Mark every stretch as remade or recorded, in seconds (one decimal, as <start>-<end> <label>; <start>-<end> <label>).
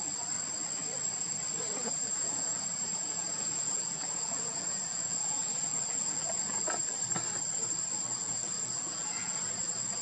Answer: 0.0-1.8 recorded; 1.8-6.8 remade; 6.8-8.2 recorded; 8.2-9.3 remade; 9.3-10.0 recorded